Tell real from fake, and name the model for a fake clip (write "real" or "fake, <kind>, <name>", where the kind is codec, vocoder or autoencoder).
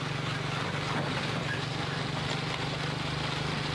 real